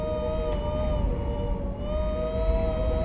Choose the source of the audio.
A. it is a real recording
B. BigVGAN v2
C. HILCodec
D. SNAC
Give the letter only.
A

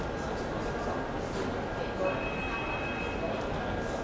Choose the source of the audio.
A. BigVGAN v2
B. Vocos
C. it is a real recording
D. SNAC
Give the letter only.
C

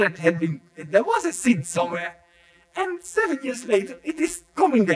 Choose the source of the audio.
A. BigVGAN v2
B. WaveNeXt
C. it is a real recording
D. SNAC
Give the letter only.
A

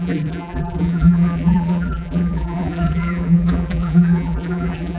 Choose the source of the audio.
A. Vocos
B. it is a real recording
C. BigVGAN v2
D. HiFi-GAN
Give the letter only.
C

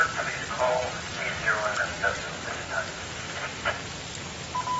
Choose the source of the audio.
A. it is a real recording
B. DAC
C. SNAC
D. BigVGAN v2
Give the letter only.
A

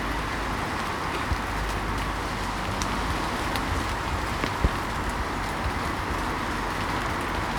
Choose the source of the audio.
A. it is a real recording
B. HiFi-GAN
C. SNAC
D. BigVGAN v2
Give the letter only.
A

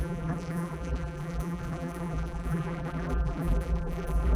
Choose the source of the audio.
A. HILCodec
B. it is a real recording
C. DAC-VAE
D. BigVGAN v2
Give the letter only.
D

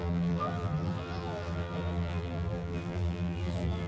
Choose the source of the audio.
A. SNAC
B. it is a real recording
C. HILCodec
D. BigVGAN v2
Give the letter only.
D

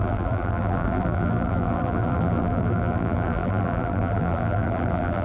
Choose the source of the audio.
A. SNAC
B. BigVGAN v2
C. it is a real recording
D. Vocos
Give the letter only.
B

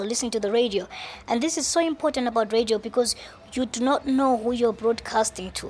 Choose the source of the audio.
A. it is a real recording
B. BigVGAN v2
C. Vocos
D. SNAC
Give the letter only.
A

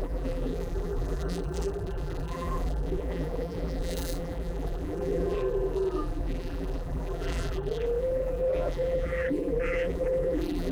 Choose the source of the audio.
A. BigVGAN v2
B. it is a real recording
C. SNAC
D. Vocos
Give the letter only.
A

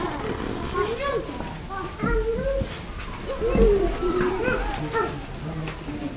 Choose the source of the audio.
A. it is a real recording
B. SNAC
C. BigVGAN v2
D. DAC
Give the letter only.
A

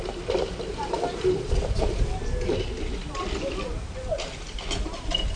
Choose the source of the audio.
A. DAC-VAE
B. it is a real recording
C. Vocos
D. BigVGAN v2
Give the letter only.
B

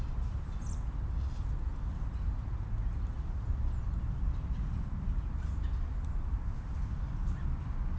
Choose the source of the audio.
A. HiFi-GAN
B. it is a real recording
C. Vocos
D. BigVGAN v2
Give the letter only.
B